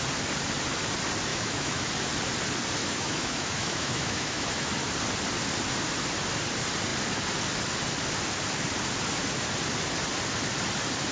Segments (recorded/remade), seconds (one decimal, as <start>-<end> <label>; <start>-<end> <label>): 0.0-1.3 recorded; 1.3-1.9 remade; 1.9-2.8 recorded; 2.8-4.7 remade; 4.7-11.1 recorded